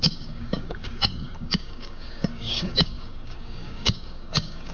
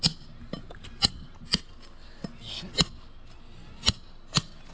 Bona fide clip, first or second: second